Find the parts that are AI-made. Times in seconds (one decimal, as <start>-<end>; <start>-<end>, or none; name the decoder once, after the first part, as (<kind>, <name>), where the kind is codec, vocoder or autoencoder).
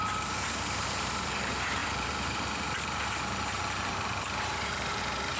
0.0-5.4 (vocoder, BigVGAN v2)